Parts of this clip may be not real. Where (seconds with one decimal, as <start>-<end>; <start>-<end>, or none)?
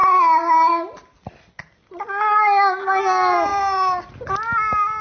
none